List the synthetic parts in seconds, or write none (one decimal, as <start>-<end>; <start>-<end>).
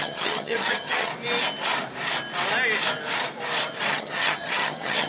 0.0-1.1; 3.9-5.1